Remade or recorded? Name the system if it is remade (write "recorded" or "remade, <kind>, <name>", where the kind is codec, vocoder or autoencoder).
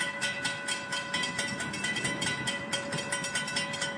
remade, vocoder, BigVGAN v2